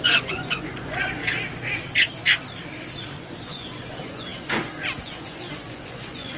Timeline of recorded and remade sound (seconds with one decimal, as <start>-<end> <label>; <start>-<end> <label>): 0.0-1.2 remade; 1.2-3.1 recorded; 3.1-6.4 remade